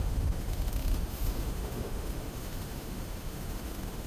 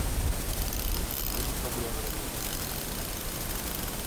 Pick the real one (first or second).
second